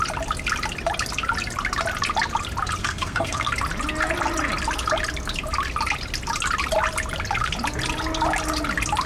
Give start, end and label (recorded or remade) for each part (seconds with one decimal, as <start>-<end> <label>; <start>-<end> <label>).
0.0-2.8 recorded; 2.8-3.5 remade; 3.5-9.1 recorded